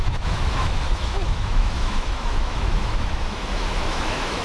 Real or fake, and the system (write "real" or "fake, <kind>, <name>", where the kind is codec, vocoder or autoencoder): fake, autoencoder, DAC-VAE